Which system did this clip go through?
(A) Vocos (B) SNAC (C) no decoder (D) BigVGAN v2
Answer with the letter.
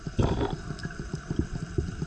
C